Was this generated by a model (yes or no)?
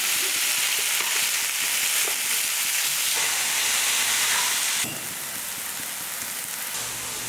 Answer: no